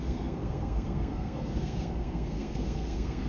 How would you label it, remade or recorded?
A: remade